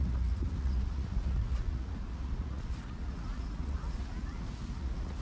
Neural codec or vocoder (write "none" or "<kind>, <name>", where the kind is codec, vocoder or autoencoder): vocoder, Vocos